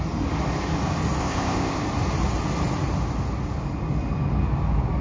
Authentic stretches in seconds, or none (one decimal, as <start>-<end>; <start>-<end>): 0.0-1.2; 1.8-5.0